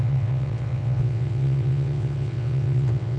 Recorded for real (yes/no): no